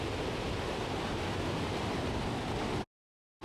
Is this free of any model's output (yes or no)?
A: yes